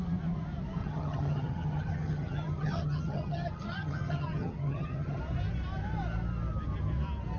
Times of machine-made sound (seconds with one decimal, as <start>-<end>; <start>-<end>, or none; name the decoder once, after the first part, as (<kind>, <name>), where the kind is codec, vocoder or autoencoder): 0.8-5.2 (vocoder, HiFi-GAN)